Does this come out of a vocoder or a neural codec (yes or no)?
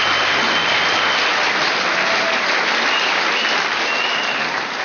no